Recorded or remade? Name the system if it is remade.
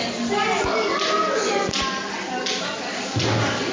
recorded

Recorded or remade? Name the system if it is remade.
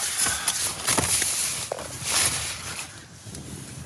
recorded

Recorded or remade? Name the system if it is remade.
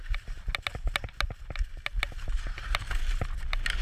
recorded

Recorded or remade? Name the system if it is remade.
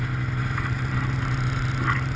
recorded